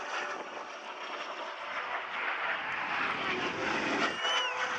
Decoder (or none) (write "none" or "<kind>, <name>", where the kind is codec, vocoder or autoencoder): none